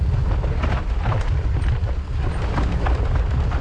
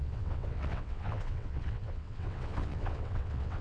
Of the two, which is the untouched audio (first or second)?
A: first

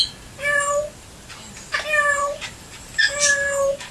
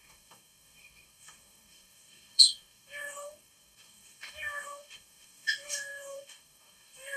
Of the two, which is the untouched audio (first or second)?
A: first